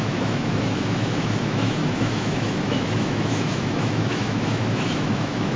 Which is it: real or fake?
fake